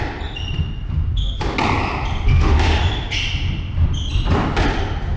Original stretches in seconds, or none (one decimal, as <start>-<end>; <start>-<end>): 0.0-2.3; 2.8-5.2